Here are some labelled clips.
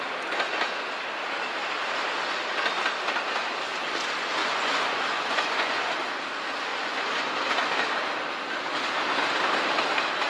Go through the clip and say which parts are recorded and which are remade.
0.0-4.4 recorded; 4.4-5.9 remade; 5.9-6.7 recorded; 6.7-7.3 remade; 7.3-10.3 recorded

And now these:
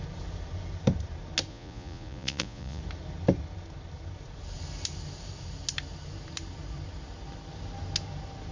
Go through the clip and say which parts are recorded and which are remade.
0.0-1.5 recorded; 1.5-2.8 remade; 2.8-8.5 recorded

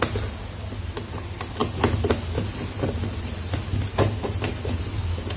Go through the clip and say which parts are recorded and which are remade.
0.0-5.4 recorded